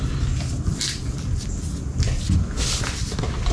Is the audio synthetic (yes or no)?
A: no